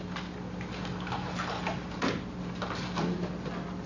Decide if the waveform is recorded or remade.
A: recorded